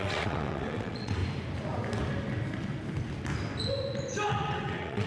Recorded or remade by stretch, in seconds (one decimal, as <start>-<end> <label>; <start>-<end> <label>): 0.0-1.2 remade; 1.2-4.3 recorded; 4.3-5.1 remade

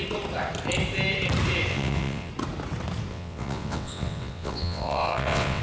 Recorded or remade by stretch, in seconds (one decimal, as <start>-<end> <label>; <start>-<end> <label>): 0.0-1.7 recorded; 1.7-2.3 remade; 2.3-3.1 recorded; 3.1-5.6 remade

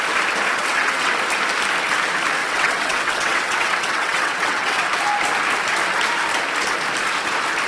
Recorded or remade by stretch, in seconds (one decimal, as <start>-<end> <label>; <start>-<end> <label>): 0.0-0.6 recorded; 0.6-1.1 remade; 1.1-2.4 recorded; 2.4-4.8 remade; 4.8-7.7 recorded

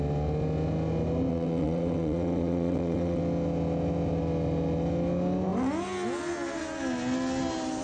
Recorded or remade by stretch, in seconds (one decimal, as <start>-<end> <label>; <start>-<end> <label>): 0.0-1.3 recorded; 1.3-3.2 remade; 3.2-7.8 recorded